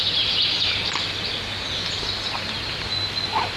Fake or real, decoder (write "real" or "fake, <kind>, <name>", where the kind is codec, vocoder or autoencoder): real